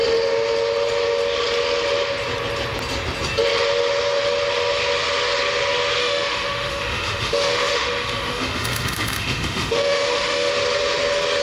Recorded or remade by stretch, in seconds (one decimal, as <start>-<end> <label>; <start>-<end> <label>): 0.0-6.0 recorded; 6.0-10.5 remade; 10.5-11.4 recorded

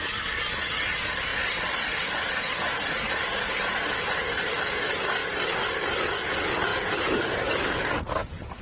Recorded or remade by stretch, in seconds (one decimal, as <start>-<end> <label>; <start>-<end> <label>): 0.0-6.7 recorded; 6.7-7.9 remade; 7.9-8.6 recorded

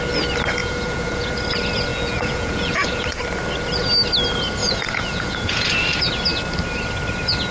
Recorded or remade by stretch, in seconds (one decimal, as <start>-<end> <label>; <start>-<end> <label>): 0.0-0.6 recorded; 0.6-1.3 remade; 1.3-1.9 recorded; 1.9-3.2 remade; 3.2-4.6 recorded; 4.6-5.7 remade; 5.7-7.5 recorded

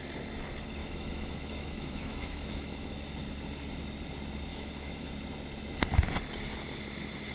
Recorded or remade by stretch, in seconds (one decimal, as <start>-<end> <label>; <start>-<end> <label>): 0.0-0.8 recorded; 0.8-3.0 remade; 3.0-4.5 recorded; 4.5-5.1 remade; 5.1-7.3 recorded

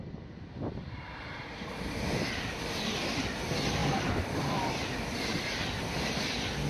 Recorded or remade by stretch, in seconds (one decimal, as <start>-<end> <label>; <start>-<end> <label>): 0.0-3.2 remade; 3.2-3.8 recorded; 3.8-4.9 remade; 4.9-5.6 recorded; 5.6-6.2 remade; 6.2-6.7 recorded

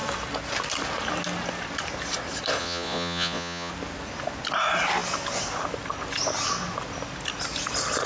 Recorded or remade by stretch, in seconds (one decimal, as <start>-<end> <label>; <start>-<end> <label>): 0.0-2.6 recorded; 2.6-3.7 remade; 3.7-8.1 recorded